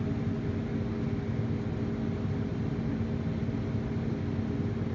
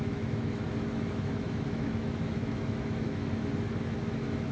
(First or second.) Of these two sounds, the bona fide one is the first